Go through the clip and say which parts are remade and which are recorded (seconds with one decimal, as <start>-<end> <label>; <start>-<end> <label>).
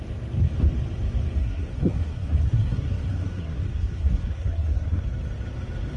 0.0-1.4 recorded; 1.4-5.0 remade; 5.0-6.0 recorded